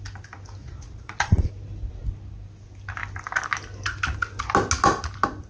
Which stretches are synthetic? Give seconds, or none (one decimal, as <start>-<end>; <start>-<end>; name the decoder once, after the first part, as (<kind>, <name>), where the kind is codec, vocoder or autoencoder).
0.6-1.5 (vocoder, Vocos)